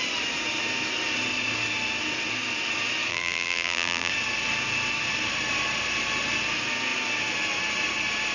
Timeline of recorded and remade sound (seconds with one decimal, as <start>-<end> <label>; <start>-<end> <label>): 0.0-3.1 recorded; 3.1-4.1 remade; 4.1-8.3 recorded

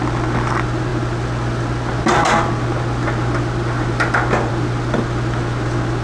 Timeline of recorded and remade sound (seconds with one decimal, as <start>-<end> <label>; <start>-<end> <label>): 0.0-6.0 recorded

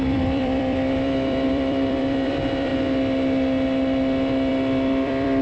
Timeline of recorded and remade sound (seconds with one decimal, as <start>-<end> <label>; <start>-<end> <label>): 0.0-2.7 remade; 2.7-4.5 recorded; 4.5-5.4 remade

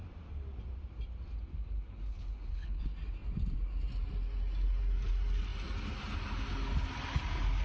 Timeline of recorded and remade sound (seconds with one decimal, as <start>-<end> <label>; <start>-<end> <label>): 0.0-1.5 recorded; 1.5-2.8 remade; 2.8-7.6 recorded

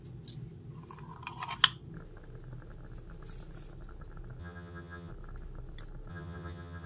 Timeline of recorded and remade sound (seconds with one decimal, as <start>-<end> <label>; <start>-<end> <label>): 0.0-4.4 recorded; 4.4-5.1 remade; 5.1-6.1 recorded; 6.1-6.9 remade